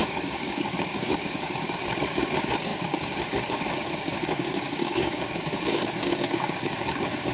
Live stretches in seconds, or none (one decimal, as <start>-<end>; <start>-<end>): none